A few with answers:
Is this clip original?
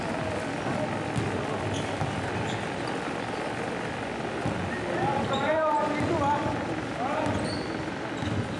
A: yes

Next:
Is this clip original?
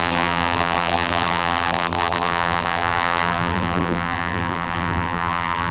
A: no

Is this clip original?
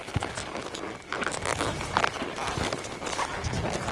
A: yes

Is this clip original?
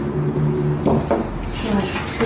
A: yes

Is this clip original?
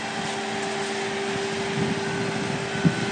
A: yes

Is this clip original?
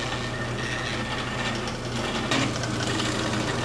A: yes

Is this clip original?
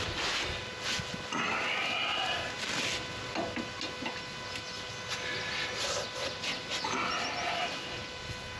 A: yes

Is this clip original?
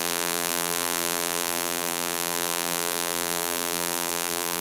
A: no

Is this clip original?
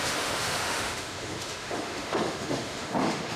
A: no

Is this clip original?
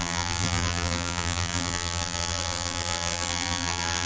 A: no